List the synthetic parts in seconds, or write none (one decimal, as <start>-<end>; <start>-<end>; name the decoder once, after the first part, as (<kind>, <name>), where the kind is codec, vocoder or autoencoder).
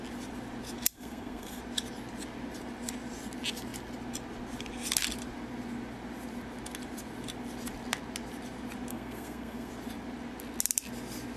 0.9-1.6 (codec, SNAC); 8.9-9.7